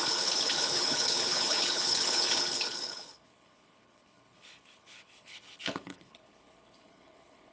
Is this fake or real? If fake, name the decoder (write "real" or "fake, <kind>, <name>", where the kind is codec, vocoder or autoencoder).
fake, codec, HILCodec